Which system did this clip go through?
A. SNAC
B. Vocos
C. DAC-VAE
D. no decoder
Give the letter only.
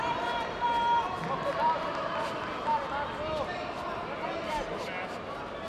D